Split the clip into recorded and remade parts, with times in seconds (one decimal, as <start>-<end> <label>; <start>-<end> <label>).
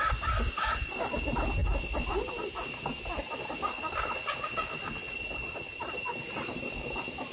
0.0-7.3 recorded